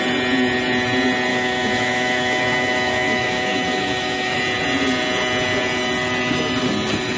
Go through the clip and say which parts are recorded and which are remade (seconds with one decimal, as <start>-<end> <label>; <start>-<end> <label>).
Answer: 0.0-1.3 recorded; 1.3-4.4 remade; 4.4-7.2 recorded